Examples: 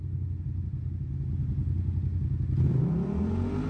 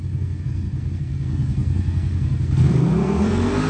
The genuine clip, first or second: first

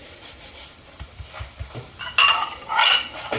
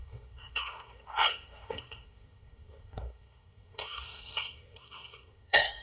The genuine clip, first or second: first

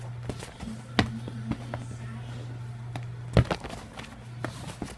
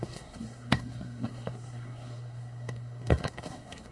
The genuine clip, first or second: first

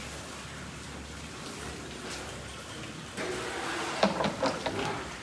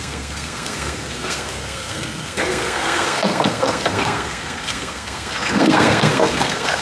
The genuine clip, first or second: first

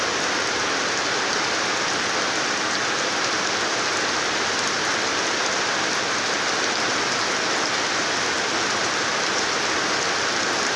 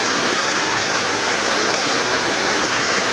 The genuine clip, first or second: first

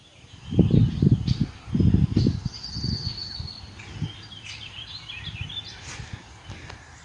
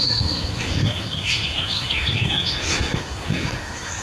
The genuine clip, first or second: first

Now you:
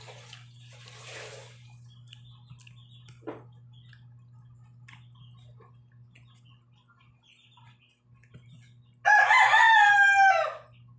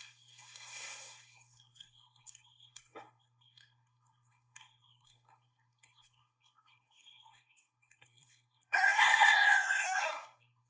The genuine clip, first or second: first